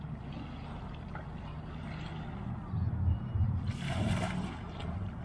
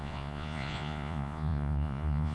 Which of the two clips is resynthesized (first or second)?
second